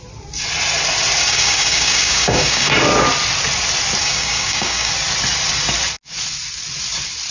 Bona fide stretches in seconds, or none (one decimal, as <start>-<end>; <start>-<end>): 0.0-1.2; 2.7-4.0; 4.9-7.3